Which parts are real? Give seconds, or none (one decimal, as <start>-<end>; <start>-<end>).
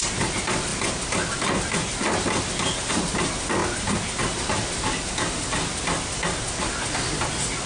0.0-7.7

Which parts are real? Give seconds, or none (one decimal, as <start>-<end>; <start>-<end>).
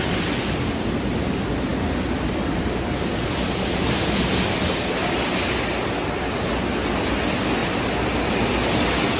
0.0-9.2